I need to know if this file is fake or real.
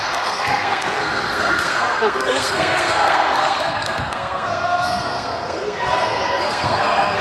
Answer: fake